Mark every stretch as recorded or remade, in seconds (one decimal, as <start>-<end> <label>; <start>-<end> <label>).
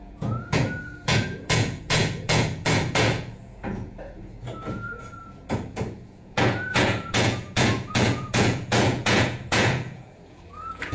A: 0.0-10.9 remade